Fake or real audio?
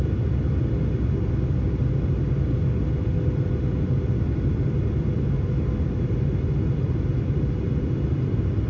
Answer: real